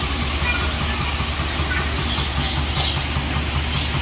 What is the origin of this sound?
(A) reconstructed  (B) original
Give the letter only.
B